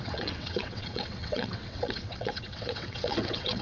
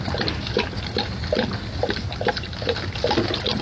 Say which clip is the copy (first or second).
first